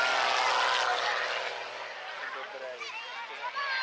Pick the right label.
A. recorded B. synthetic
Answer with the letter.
A